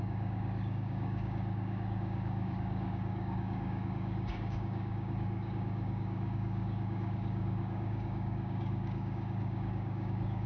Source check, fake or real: fake